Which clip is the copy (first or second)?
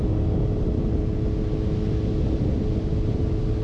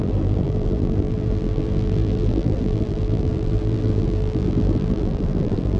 second